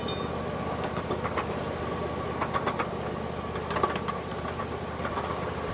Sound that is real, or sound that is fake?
real